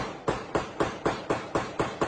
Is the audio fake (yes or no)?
no